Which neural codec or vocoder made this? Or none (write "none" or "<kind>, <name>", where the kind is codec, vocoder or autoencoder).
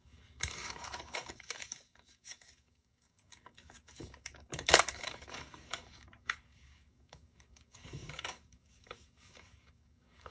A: codec, DAC